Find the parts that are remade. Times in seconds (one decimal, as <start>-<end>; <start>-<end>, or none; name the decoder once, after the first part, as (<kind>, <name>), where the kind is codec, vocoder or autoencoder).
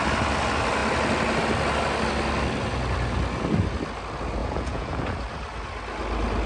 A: 4.4-5.0 (vocoder, Vocos)